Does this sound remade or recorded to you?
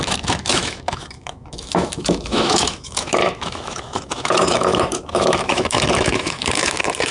remade